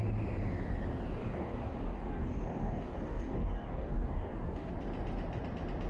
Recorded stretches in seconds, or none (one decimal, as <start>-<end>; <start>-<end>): 0.0-1.2; 4.7-5.9

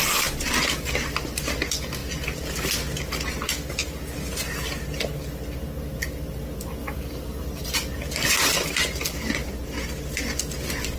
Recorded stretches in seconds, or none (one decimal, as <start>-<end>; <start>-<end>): 0.0-6.8; 7.4-11.0